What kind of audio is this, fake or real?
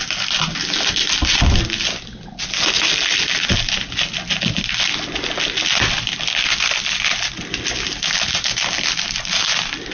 real